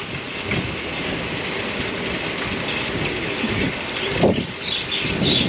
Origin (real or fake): real